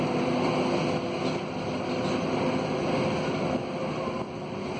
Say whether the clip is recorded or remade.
recorded